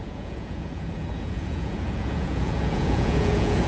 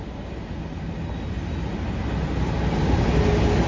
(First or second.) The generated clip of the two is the first